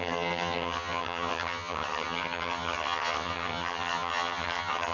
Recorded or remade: remade